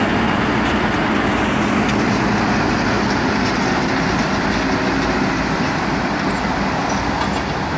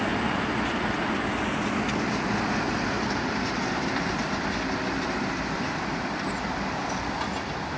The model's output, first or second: second